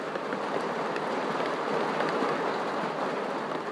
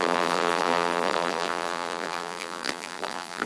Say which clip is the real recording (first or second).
first